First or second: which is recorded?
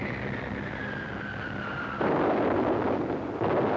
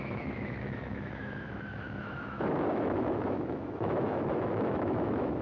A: first